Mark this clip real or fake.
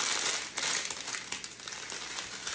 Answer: real